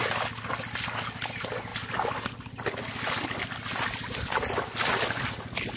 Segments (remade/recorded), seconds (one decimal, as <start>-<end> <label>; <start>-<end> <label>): 0.0-5.8 recorded